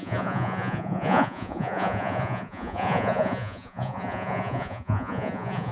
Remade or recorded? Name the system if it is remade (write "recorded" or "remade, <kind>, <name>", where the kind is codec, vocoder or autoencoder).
remade, vocoder, Vocos